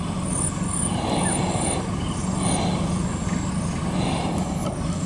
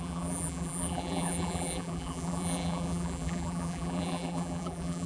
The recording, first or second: first